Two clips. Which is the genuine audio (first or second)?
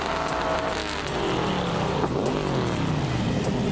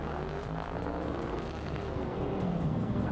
first